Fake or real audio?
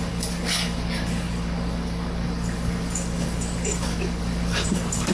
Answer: fake